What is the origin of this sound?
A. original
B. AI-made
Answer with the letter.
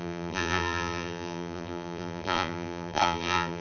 B